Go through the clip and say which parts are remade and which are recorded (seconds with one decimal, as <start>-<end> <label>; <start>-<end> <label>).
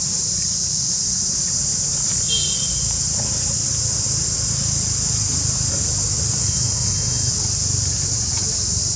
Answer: 0.0-6.4 recorded; 6.4-7.3 remade; 7.3-9.0 recorded